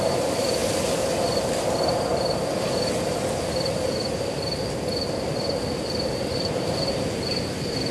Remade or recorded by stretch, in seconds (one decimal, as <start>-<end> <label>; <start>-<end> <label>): 0.0-7.9 recorded